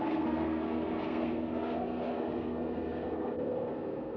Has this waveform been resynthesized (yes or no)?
yes